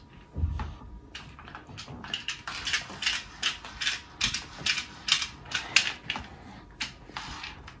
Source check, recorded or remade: recorded